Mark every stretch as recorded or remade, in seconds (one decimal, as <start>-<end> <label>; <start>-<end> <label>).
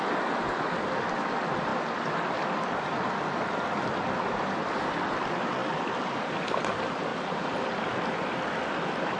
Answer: 0.0-9.2 recorded